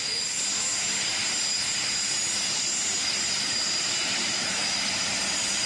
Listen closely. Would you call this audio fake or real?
real